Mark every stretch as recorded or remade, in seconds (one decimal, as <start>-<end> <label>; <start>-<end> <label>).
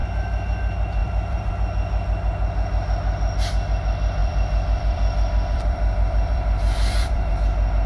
0.0-1.0 recorded; 1.0-1.5 remade; 1.5-4.2 recorded; 4.2-7.3 remade; 7.3-7.9 recorded